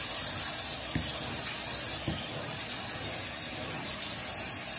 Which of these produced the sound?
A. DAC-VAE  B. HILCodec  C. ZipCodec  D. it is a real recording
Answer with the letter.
D